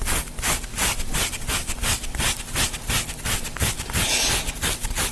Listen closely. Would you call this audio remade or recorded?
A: recorded